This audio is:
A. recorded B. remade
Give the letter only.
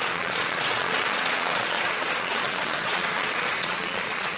B